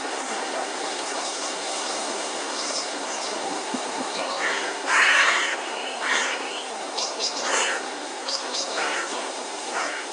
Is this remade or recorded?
remade